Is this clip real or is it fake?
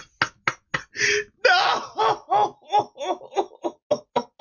real